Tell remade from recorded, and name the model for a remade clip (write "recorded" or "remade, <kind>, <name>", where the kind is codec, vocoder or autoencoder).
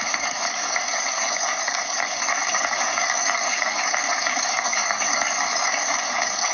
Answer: remade, codec, DAC